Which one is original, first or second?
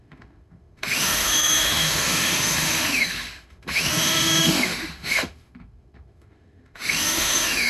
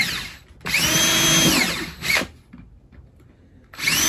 second